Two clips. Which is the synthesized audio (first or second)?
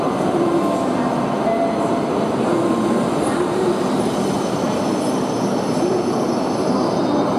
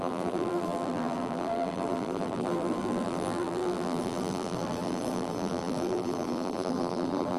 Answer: second